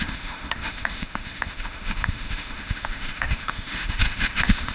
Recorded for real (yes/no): no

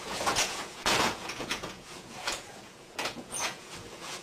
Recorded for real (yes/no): no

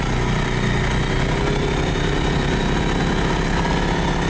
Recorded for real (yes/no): yes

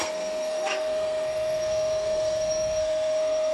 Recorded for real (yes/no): no